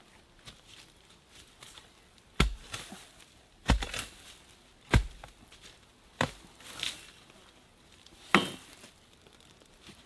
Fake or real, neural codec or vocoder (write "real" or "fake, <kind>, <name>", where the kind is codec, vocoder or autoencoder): real